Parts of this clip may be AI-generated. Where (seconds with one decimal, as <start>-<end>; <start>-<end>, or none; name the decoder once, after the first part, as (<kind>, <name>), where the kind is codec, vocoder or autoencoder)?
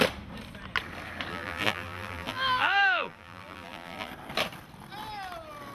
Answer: 1.3-4.1 (vocoder, BigVGAN v2)